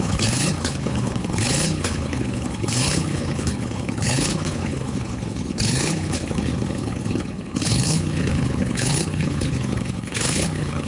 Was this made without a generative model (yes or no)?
no